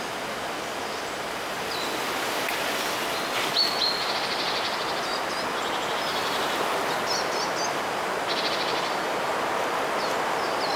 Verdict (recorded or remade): recorded